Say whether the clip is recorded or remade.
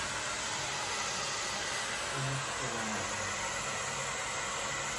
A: recorded